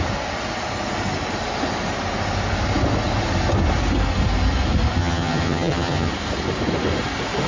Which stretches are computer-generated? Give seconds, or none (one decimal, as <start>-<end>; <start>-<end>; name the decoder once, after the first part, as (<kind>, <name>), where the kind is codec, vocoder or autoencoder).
5.0-6.1 (vocoder, HiFi-GAN)

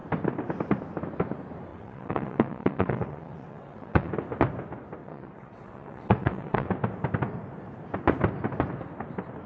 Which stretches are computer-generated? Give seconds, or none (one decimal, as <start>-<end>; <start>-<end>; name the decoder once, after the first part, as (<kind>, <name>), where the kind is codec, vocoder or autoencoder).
1.7-4.1 (vocoder, WaveNeXt); 5.0-6.7

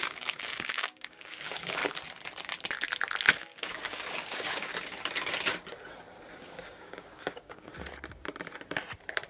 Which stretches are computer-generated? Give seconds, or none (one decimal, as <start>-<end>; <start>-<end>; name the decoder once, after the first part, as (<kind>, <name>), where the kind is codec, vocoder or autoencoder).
0.0-1.8 (codec, DAC); 3.4-4.7; 6.4-7.7

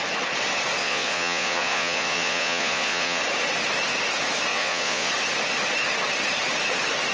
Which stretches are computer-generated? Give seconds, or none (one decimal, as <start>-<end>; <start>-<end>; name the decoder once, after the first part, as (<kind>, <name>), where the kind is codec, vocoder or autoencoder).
0.8-3.2 (vocoder, Vocos); 4.5-5.1

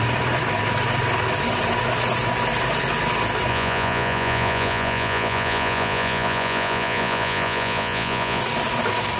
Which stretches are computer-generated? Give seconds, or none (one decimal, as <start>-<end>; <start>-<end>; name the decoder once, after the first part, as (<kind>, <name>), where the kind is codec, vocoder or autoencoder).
3.5-8.4 (vocoder, Vocos)

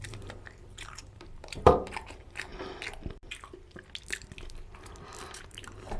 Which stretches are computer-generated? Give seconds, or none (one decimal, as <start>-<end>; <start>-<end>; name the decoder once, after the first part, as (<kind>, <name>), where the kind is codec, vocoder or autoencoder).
0.0-2.5 (vocoder, BigVGAN v2); 5.4-6.0

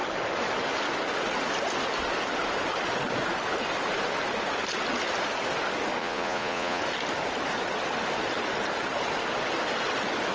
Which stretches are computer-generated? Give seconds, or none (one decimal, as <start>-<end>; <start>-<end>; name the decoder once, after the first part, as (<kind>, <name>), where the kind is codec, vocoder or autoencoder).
6.0-6.8 (vocoder, Vocos)

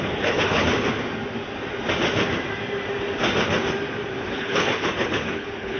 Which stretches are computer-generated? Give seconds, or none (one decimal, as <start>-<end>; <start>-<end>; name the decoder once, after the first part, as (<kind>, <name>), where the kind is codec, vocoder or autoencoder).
0.0-0.7 (codec, HILCodec); 4.2-5.8